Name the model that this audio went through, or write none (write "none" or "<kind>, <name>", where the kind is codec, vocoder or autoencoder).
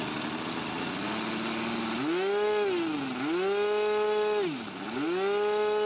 none